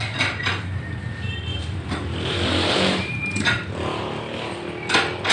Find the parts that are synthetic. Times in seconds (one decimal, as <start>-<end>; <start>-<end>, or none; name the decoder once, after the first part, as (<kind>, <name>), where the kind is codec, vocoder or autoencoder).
1.5-3.7 (vocoder, BigVGAN v2)